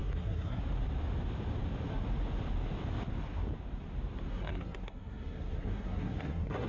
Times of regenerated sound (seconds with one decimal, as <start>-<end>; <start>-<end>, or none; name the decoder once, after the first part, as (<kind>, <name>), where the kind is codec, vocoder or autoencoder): 0.0-0.6 (codec, SNAC); 4.3-6.7